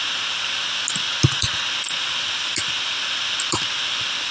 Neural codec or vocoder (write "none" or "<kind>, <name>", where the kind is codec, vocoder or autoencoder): none